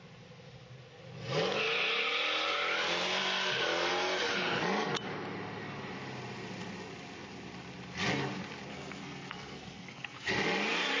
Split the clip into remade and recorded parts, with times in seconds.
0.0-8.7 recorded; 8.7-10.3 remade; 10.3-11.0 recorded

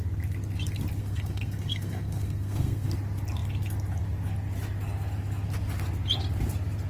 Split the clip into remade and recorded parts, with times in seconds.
0.0-1.0 recorded; 1.0-2.9 remade; 2.9-6.9 recorded

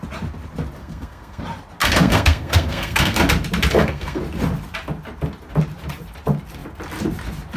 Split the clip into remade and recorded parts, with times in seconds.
0.0-0.8 recorded; 0.8-1.4 remade; 1.4-1.8 recorded; 1.8-3.2 remade; 3.2-3.7 recorded; 3.7-4.2 remade; 4.2-7.6 recorded

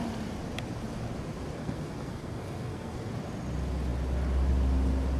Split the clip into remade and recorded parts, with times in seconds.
0.0-1.6 recorded; 1.6-3.1 remade; 3.1-5.2 recorded

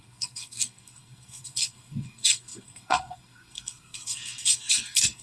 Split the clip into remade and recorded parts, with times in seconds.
0.0-5.2 remade

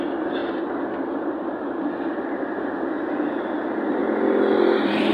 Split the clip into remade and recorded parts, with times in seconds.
0.0-5.1 recorded

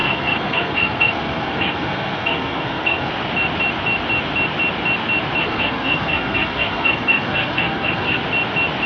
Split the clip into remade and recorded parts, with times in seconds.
0.0-3.1 remade; 3.1-5.4 recorded; 5.4-8.2 remade; 8.2-8.9 recorded

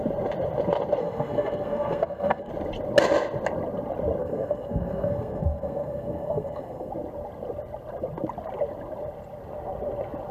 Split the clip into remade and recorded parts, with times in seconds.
0.0-1.0 recorded; 1.0-2.5 remade; 2.5-4.2 recorded; 4.2-6.9 remade; 6.9-10.3 recorded